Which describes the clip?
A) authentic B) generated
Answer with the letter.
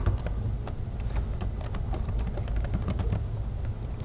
A